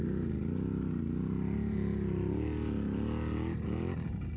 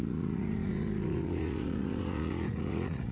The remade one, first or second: second